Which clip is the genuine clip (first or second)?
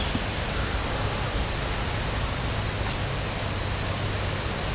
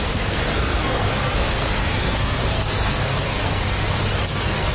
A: first